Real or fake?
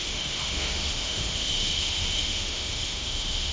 fake